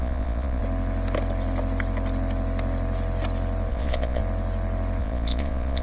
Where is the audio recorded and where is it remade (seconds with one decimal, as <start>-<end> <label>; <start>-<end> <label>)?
0.0-0.6 remade; 0.6-3.7 recorded; 3.7-4.2 remade; 4.2-5.0 recorded; 5.0-5.8 remade